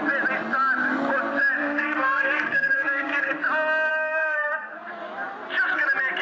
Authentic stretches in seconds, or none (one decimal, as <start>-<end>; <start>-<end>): 0.0-1.6; 3.3-3.9; 4.9-6.2